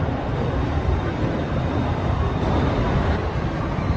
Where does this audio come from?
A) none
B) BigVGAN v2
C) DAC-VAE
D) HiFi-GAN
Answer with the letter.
B